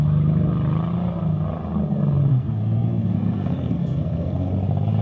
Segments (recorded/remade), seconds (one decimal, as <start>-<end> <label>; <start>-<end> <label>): 0.0-2.3 recorded; 2.3-4.5 remade; 4.5-5.0 recorded